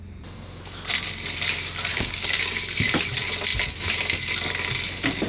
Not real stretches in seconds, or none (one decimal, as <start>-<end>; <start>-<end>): 1.9-2.5